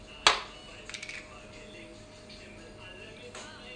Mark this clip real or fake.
real